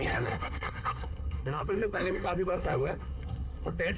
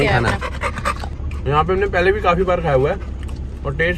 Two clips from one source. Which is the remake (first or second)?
first